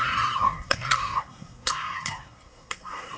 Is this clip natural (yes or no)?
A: no